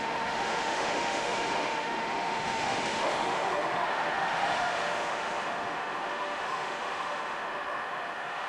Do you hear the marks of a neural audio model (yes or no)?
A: yes